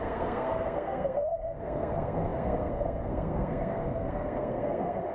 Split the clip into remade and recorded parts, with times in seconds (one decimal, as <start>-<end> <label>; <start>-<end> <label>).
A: 0.0-5.1 remade